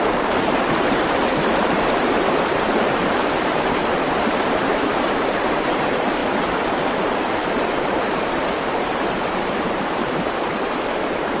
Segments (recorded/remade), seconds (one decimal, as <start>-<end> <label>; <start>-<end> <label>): 0.0-6.2 remade; 6.2-7.2 recorded; 7.2-11.4 remade